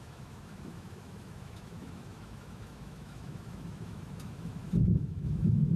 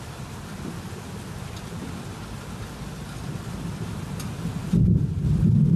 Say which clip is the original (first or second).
second